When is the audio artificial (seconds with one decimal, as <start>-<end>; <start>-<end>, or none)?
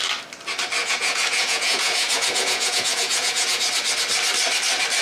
0.8-3.7